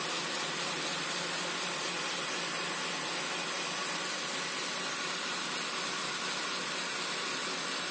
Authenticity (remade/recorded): recorded